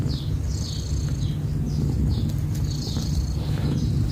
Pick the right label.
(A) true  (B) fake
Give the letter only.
A